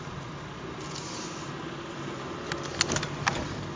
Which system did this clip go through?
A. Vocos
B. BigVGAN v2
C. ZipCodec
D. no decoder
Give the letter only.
D